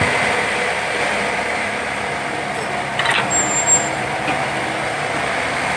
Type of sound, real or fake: real